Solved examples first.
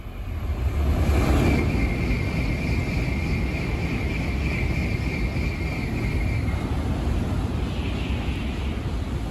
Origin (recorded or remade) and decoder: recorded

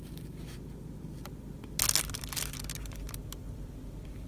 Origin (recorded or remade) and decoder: recorded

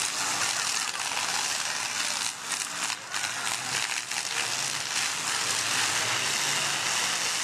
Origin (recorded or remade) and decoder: recorded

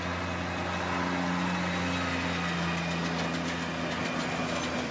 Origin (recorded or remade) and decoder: recorded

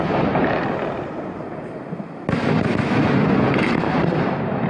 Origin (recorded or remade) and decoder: recorded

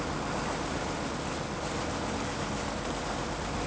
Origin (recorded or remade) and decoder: recorded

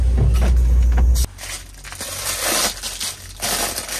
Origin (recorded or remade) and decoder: recorded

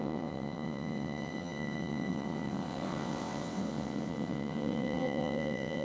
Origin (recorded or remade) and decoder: remade, vocoder, WaveNeXt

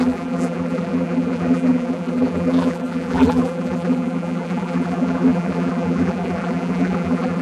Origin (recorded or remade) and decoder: remade, vocoder, BigVGAN v2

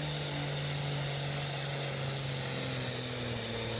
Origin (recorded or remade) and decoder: recorded